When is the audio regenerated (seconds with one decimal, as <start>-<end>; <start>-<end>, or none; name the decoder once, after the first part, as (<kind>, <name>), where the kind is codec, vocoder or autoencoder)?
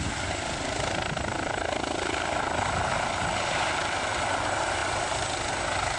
none